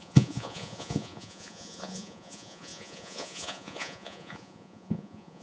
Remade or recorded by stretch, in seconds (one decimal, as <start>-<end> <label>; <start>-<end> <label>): 0.0-5.4 remade